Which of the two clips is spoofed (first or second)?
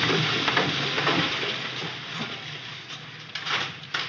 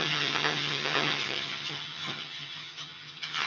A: second